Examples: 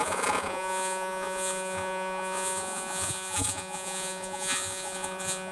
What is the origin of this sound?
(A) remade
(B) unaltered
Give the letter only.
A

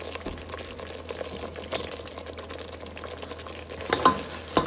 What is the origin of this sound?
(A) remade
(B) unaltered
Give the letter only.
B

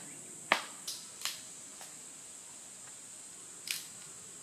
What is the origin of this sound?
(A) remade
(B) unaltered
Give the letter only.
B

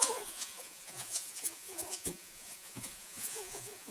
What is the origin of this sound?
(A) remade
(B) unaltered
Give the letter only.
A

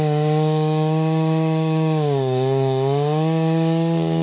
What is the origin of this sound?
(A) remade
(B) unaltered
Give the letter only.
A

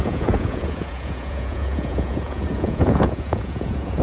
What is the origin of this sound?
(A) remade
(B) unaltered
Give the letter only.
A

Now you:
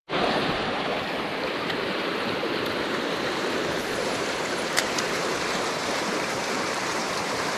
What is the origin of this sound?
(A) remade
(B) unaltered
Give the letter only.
A